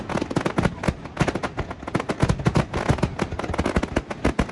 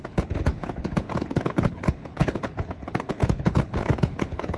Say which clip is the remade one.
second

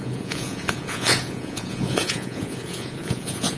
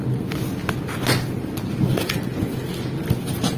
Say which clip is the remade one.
first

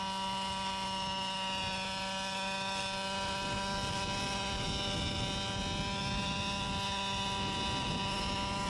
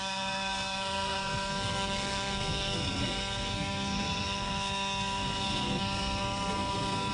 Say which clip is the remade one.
second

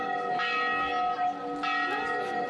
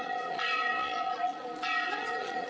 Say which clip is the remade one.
second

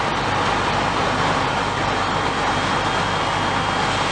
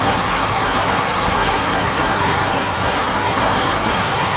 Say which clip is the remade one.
second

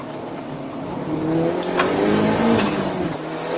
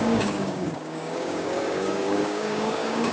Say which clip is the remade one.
second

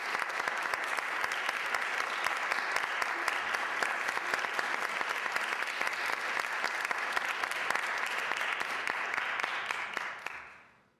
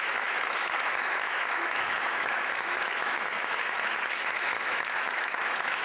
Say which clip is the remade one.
second